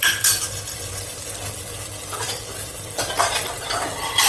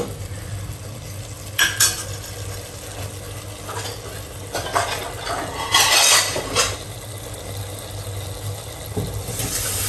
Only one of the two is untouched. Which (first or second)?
second